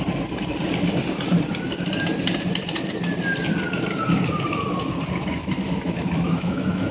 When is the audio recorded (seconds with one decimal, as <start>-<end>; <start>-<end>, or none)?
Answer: 0.0-5.4